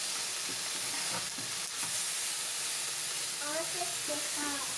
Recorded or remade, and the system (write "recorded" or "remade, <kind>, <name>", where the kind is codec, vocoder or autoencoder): recorded